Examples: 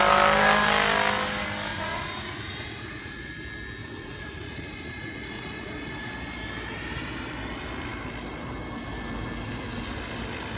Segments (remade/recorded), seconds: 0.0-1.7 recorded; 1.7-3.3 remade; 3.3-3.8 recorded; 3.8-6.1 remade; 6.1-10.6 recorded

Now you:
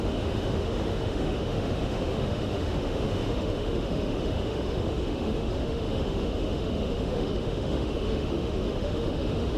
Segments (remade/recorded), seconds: 0.0-9.6 remade

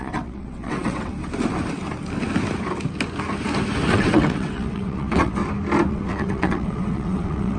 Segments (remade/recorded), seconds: 0.0-1.1 remade; 1.1-3.9 recorded; 3.9-5.4 remade; 5.4-5.9 recorded; 5.9-7.6 remade

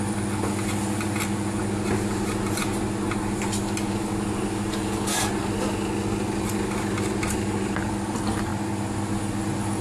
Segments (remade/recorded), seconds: 0.0-9.8 recorded

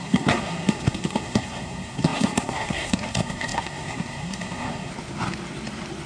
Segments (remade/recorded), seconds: 0.0-4.9 remade; 4.9-6.1 recorded

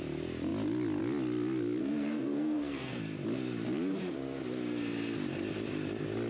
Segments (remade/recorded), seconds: 0.0-1.8 recorded; 1.8-3.0 remade; 3.0-6.3 recorded